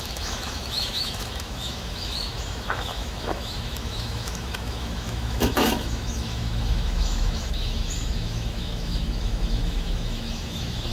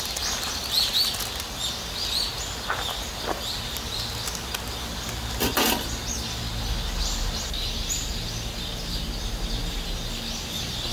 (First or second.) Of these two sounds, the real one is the second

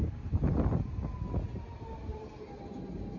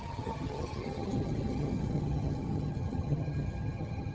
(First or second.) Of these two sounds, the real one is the first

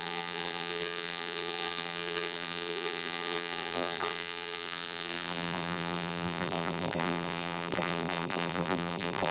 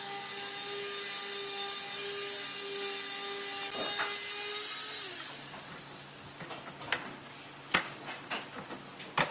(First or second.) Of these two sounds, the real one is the second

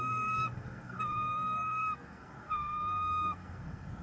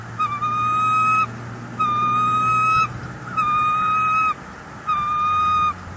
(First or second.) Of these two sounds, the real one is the second